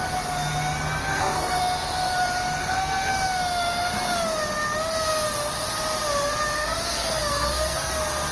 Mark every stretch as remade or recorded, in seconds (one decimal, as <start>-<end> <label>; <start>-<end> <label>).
0.0-1.0 recorded; 1.0-1.6 remade; 1.6-2.6 recorded; 2.6-3.1 remade; 3.1-6.6 recorded; 6.6-7.9 remade; 7.9-8.3 recorded